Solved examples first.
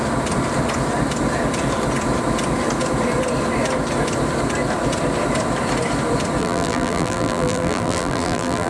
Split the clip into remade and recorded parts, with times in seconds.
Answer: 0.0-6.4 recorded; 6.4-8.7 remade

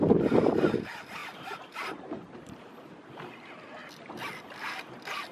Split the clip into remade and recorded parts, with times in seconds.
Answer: 0.0-1.2 recorded; 1.2-3.0 remade; 3.0-5.3 recorded